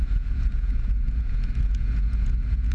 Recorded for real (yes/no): no